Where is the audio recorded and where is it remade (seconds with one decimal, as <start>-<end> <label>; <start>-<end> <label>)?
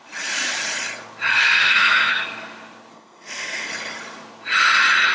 0.0-1.3 recorded; 1.3-2.1 remade; 2.1-2.9 recorded; 2.9-3.7 remade; 3.7-5.1 recorded